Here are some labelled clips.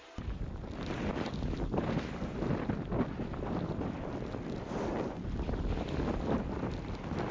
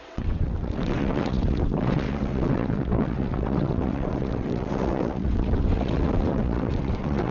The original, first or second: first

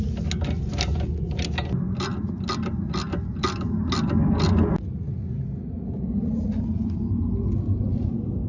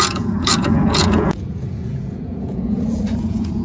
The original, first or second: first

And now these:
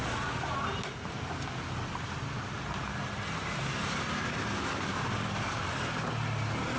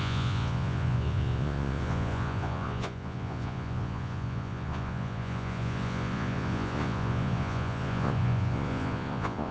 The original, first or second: first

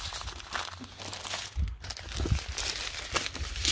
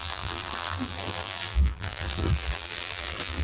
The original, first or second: first